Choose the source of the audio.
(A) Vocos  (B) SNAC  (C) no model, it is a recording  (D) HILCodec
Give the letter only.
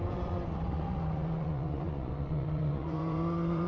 A